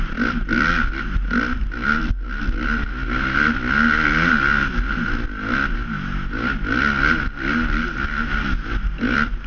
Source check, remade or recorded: recorded